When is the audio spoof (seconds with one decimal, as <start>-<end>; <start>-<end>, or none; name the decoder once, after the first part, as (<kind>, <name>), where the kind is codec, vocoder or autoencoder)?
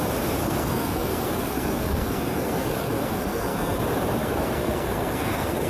0.4-3.8 (codec, SNAC); 4.2-5.7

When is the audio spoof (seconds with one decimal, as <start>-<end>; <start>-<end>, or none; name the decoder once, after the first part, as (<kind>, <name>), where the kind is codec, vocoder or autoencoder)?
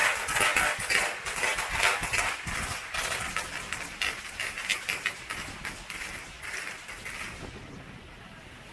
none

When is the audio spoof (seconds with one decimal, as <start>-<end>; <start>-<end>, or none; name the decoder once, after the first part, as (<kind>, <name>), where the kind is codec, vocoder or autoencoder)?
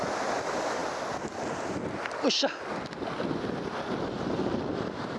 none